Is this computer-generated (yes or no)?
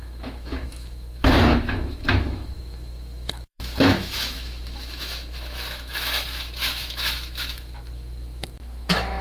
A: yes